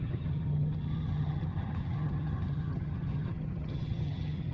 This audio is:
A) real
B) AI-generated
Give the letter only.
B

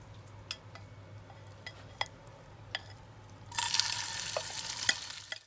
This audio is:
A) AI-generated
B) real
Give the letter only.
B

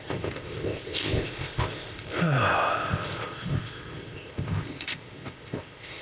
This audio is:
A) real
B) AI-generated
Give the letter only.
B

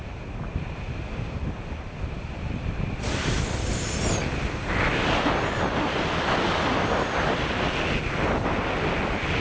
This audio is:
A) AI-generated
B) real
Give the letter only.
B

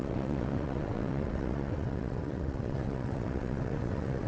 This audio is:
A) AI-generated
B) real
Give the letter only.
A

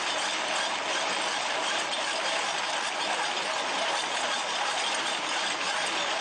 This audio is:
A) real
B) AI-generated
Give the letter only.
A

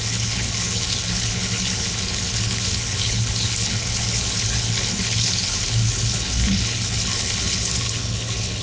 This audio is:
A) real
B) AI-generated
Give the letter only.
B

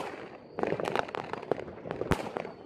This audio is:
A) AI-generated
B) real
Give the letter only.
B